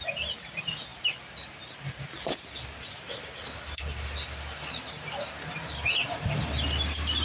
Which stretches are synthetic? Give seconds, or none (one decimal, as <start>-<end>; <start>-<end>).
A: none